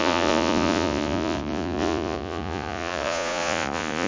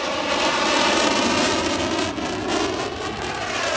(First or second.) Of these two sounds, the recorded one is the second